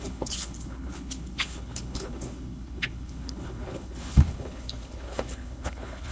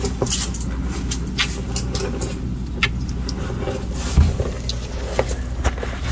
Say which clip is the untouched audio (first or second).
second